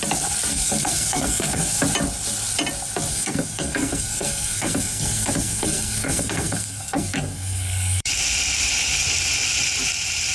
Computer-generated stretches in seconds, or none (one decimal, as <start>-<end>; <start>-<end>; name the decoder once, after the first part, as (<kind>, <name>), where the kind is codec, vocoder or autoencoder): 0.5-1.8 (codec, SNAC); 3.1-8.1